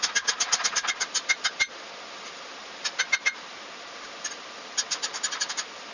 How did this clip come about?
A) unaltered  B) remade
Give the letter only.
A